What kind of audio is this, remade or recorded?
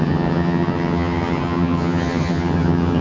remade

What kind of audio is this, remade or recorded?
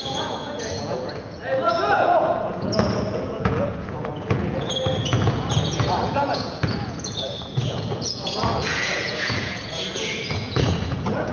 remade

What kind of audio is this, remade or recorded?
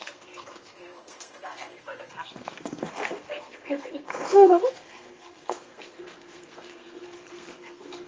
remade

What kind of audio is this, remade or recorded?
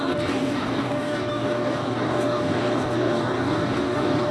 remade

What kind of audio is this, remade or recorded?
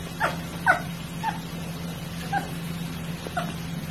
recorded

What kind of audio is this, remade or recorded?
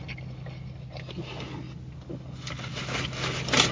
recorded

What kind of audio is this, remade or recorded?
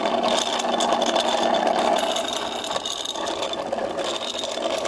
recorded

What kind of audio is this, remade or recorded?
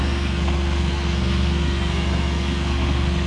remade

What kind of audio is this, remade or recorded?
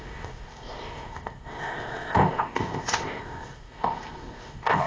remade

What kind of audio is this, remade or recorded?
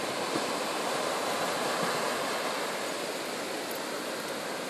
recorded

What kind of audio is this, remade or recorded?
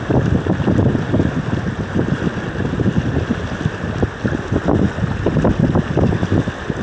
recorded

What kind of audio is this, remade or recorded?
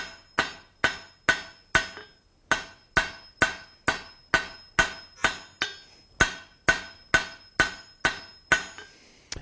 recorded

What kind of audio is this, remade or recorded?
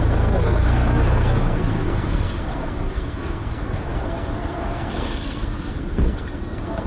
remade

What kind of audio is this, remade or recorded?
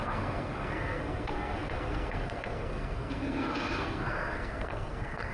remade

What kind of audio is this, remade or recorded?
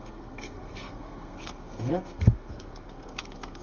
remade